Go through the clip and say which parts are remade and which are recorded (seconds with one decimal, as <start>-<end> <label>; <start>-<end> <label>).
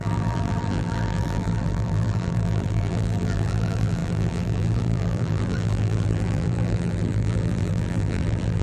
0.0-8.6 remade